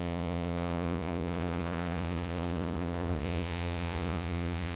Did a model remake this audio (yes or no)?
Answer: yes